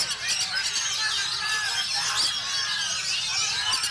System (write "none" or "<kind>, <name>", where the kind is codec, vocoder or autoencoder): none